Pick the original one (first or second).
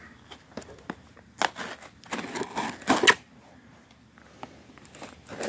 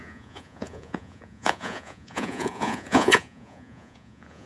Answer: first